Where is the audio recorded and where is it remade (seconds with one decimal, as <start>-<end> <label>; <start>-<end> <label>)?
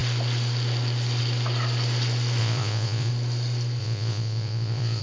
0.0-2.4 recorded; 2.4-3.1 remade; 3.1-3.8 recorded; 3.8-5.0 remade